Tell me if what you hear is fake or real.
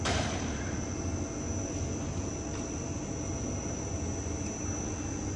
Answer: real